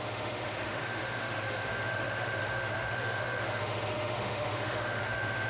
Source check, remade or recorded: remade